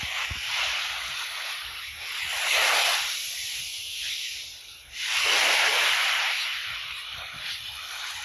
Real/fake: real